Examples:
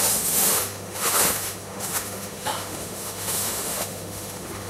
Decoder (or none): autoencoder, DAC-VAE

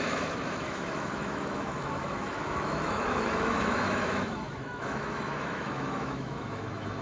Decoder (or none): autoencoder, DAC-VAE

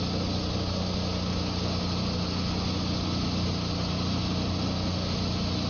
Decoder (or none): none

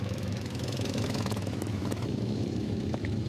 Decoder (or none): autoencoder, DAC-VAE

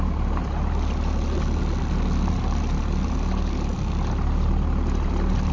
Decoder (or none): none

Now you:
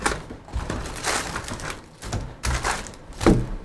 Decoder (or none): none